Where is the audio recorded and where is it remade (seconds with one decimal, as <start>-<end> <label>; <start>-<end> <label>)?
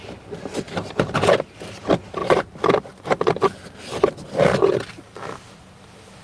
0.0-6.2 recorded